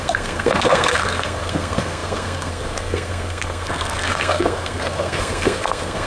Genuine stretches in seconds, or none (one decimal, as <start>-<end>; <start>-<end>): none